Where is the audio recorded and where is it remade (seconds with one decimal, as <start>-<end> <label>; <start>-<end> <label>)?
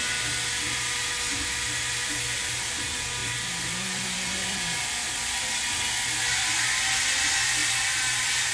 0.0-3.2 recorded; 3.2-5.4 remade; 5.4-7.6 recorded; 7.6-8.5 remade